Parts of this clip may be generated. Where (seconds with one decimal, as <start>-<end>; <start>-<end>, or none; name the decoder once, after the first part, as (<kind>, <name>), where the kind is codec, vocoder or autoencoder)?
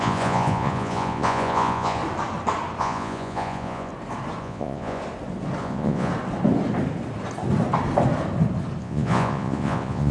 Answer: 0.0-2.0 (vocoder, Vocos); 2.8-3.9; 4.4-5.0; 5.6-6.1; 8.8-10.1